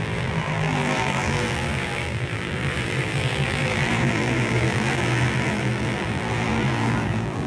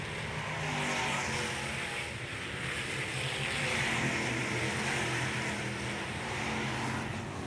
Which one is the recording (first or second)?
second